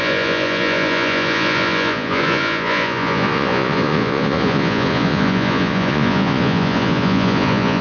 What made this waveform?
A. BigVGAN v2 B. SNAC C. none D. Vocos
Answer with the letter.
D